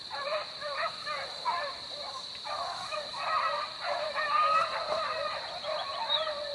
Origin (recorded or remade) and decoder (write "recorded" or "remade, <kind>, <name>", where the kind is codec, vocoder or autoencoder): remade, vocoder, BigVGAN v2